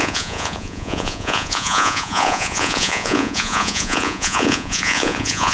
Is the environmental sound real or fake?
fake